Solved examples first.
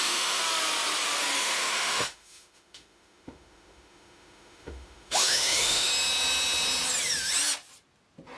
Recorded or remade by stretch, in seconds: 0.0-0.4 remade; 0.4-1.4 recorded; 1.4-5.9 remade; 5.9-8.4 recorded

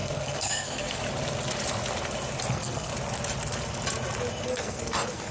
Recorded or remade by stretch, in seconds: 0.0-1.0 remade; 1.0-2.5 recorded; 2.5-2.9 remade; 2.9-4.3 recorded; 4.3-5.3 remade

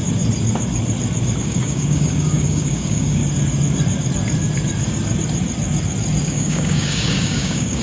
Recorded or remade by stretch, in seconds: 0.0-1.4 recorded; 1.4-3.2 remade; 3.2-6.2 recorded; 6.2-7.8 remade

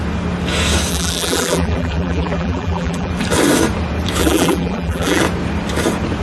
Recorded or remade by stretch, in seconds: 0.0-0.9 recorded; 0.9-3.1 remade; 3.1-4.2 recorded; 4.2-5.2 remade; 5.2-6.2 recorded